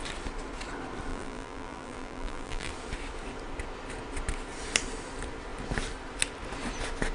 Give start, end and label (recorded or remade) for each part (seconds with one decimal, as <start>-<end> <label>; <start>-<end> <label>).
0.0-1.1 recorded; 1.1-2.7 remade; 2.7-7.1 recorded